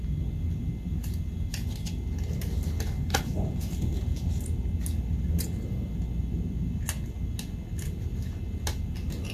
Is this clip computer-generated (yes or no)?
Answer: no